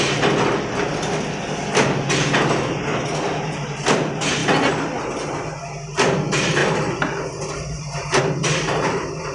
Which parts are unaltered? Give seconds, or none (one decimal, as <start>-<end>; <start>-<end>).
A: 0.0-9.3